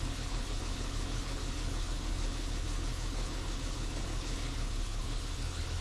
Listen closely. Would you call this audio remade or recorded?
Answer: remade